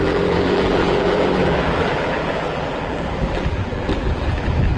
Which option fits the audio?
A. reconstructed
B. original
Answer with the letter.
A